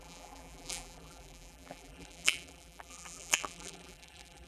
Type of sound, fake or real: fake